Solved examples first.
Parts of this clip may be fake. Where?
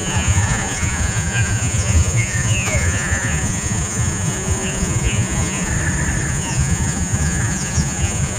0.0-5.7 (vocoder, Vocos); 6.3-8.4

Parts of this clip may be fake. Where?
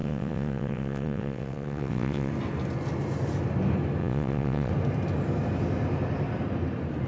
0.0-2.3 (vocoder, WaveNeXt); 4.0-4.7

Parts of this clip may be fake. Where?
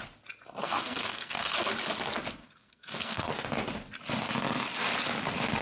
0.6-1.7 (codec, SNAC); 2.4-3.3